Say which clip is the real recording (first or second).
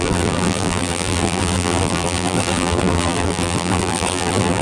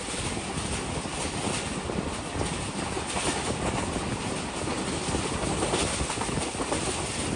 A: second